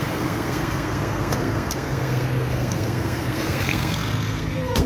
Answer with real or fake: fake